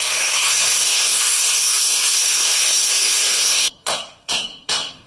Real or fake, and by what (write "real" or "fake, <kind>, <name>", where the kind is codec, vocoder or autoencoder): fake, codec, SNAC